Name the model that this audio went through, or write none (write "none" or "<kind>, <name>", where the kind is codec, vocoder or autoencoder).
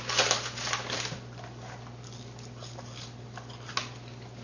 none